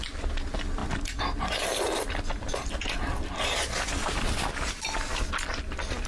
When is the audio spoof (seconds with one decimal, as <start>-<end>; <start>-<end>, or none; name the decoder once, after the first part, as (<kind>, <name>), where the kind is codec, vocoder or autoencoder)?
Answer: none